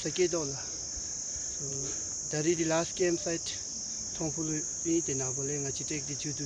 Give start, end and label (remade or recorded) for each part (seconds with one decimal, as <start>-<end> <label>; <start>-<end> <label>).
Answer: 0.0-1.7 recorded; 1.7-2.6 remade; 2.6-6.5 recorded